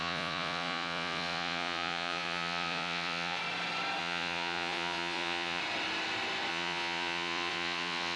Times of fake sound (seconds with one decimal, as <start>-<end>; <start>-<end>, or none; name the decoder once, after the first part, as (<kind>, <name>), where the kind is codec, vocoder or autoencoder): 0.0-3.4 (vocoder, Vocos); 4.0-5.6; 6.5-8.2